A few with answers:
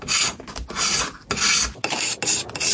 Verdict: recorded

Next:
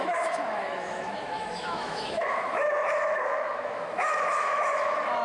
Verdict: remade